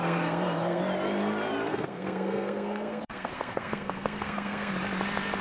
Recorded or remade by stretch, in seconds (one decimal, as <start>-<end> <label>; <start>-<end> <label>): 0.0-0.8 remade; 0.8-1.7 recorded; 1.7-4.7 remade; 4.7-5.4 recorded